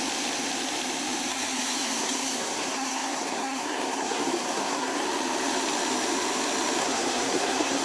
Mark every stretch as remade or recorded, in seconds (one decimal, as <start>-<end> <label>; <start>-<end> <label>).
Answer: 0.0-1.3 recorded; 1.3-5.0 remade; 5.0-6.8 recorded; 6.8-7.8 remade